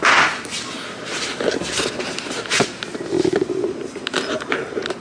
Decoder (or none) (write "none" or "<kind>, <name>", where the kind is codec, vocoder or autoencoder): none